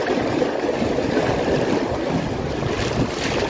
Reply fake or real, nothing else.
real